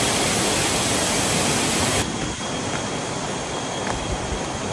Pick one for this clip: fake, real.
fake